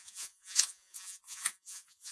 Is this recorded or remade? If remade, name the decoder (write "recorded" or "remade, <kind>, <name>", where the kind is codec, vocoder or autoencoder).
remade, vocoder, Vocos